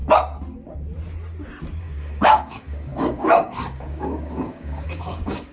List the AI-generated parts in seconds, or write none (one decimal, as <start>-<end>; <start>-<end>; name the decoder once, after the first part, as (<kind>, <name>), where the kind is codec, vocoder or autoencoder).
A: 1.8-5.5 (codec, DAC)